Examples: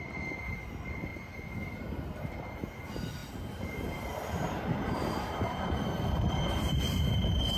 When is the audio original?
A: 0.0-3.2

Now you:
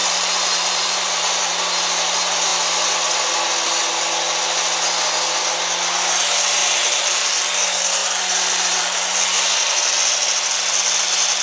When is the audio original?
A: 1.4-6.6; 7.3-8.0; 9.8-11.4

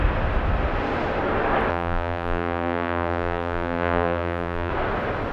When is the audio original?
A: 0.0-1.7; 4.7-5.3

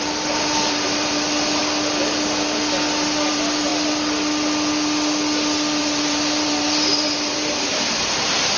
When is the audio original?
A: 1.6-3.3; 3.7-5.8